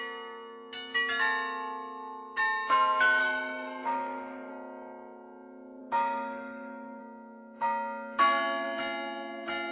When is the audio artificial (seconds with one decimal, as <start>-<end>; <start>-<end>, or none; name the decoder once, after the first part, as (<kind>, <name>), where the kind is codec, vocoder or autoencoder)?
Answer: 3.2-4.5 (codec, DAC); 5.8-7.0